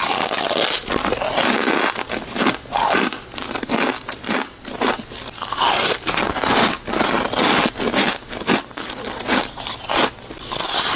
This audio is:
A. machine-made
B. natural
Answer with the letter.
B